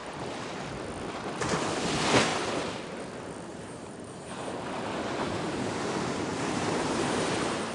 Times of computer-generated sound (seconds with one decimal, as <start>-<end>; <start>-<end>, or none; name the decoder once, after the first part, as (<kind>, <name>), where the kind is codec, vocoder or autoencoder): 2.3-3.0 (vocoder, BigVGAN v2); 3.5-7.7